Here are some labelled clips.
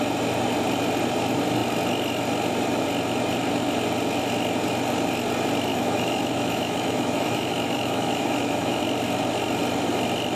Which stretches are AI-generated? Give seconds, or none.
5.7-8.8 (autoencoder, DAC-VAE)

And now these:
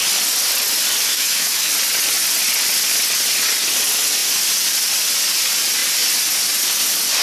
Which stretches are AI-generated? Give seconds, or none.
1.1-1.7 (autoencoder, DAC-VAE)

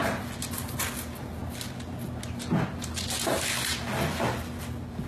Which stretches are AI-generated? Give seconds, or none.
none

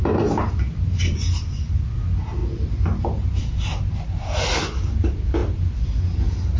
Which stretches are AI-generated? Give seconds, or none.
none

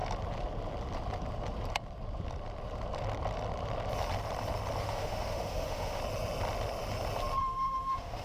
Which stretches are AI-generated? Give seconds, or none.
4.8-6.0 (autoencoder, DAC-VAE); 7.4-8.2

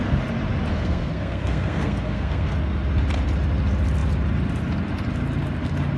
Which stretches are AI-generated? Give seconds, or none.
0.7-2.5 (codec, SNAC)